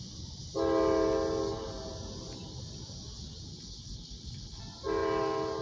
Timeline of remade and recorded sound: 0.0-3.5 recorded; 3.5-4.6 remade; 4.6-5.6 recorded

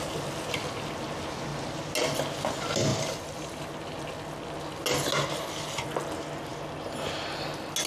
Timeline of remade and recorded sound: 0.0-2.9 recorded; 2.9-3.6 remade; 3.6-7.9 recorded

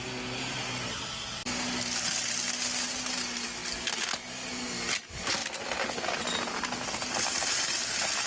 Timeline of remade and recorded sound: 0.0-8.3 recorded

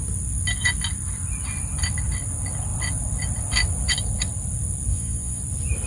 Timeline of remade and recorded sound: 0.0-4.9 recorded; 4.9-5.4 remade; 5.4-5.9 recorded

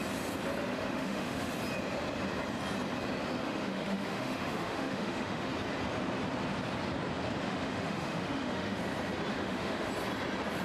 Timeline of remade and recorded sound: 0.0-0.7 recorded; 0.7-1.5 remade; 1.5-3.4 recorded; 3.4-5.5 remade; 5.5-7.5 recorded; 7.5-8.8 remade; 8.8-9.3 recorded; 9.3-9.9 remade; 9.9-10.6 recorded

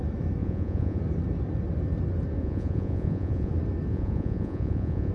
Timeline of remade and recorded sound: 0.0-0.4 recorded; 0.4-1.0 remade; 1.0-2.4 recorded; 2.4-3.5 remade; 3.5-3.9 recorded; 3.9-5.1 remade

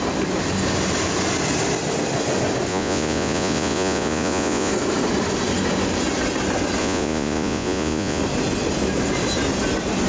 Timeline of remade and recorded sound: 0.0-2.7 recorded; 2.7-4.7 remade; 4.7-6.8 recorded; 6.8-8.2 remade; 8.2-10.1 recorded

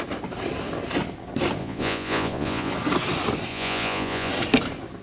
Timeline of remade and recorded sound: 0.0-1.6 recorded; 1.6-2.7 remade; 2.7-3.5 recorded; 3.5-4.3 remade; 4.3-5.0 recorded